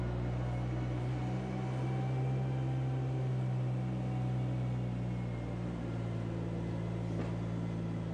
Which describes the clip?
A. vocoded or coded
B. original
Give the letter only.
B